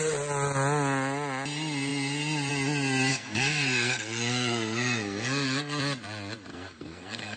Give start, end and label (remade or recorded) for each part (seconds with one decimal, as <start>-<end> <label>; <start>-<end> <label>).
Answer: 0.0-3.1 recorded; 3.1-5.8 remade; 5.8-6.5 recorded; 6.5-7.4 remade